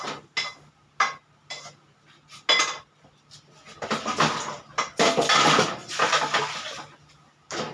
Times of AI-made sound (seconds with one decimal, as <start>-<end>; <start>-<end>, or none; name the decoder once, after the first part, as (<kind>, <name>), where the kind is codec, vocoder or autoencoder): none